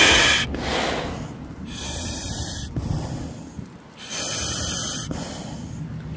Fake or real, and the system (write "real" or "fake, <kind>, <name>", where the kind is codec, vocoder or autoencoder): real